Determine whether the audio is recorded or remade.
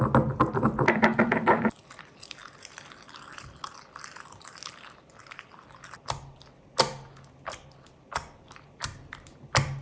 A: recorded